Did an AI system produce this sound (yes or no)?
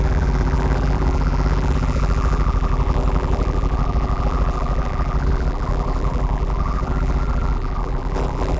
yes